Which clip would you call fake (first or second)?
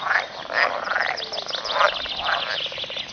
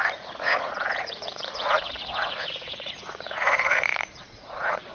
second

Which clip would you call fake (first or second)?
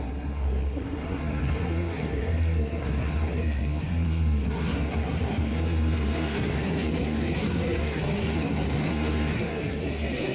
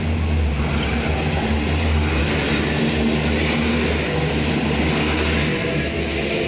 first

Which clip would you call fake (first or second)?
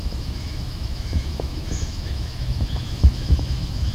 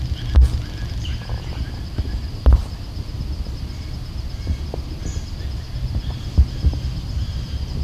first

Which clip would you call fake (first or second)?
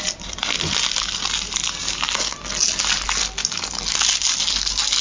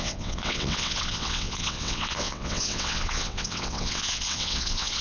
second